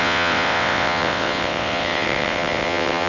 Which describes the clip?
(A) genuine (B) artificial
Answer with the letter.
B